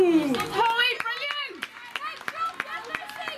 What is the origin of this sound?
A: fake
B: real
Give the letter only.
B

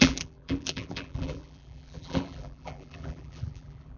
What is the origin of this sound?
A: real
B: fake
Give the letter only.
B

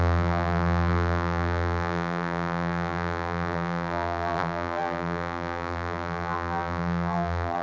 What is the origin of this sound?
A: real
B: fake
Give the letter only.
B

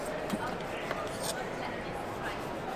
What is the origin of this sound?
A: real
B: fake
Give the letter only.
A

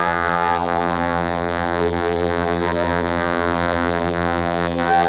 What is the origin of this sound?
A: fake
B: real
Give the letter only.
A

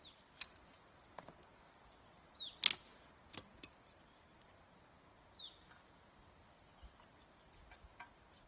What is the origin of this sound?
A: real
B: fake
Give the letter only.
A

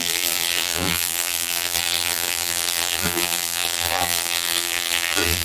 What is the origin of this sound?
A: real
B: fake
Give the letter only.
B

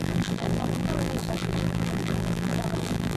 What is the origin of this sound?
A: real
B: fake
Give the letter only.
B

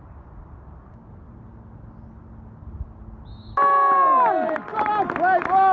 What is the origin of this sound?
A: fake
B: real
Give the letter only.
B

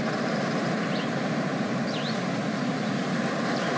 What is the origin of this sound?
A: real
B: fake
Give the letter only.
B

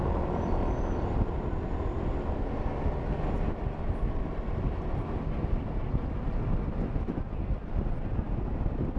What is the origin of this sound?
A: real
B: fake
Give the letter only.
A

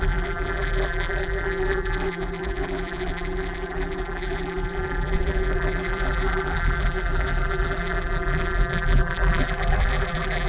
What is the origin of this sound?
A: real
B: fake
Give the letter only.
B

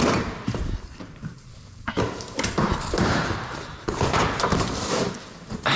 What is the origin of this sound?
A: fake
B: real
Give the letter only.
A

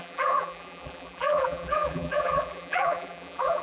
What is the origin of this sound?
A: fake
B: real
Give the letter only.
A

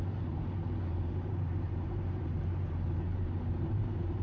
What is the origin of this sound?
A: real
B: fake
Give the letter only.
B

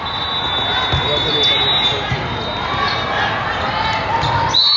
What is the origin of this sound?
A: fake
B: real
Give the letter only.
B